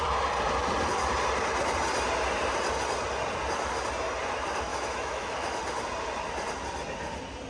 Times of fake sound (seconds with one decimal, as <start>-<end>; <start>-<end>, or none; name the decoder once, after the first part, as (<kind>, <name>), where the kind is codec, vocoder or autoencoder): 4.7-5.6 (autoencoder, DAC-VAE)